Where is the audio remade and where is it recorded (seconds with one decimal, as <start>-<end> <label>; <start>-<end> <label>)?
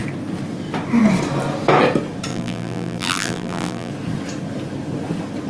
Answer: 0.0-2.3 recorded; 2.3-3.9 remade; 3.9-5.5 recorded